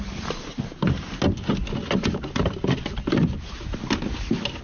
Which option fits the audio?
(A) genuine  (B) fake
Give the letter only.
A